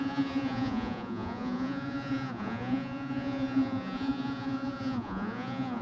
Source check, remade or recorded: remade